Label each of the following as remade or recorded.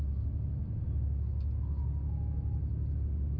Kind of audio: recorded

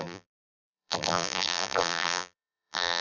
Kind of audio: remade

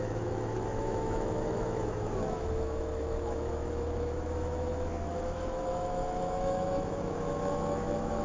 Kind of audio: remade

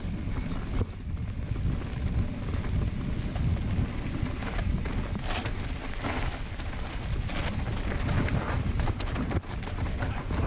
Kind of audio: recorded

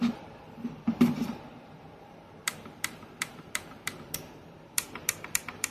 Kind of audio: remade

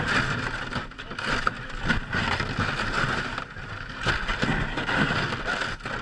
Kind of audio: recorded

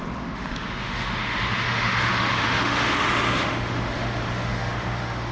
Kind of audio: remade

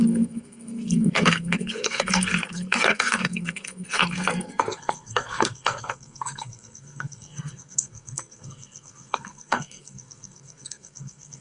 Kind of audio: remade